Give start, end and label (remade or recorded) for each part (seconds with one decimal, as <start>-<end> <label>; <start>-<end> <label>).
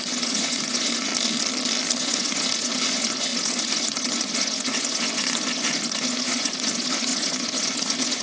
0.0-1.1 remade; 1.1-2.0 recorded; 2.0-8.2 remade